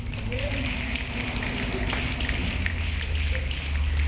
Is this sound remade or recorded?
recorded